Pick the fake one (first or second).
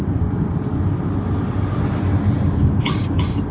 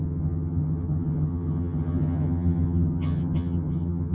second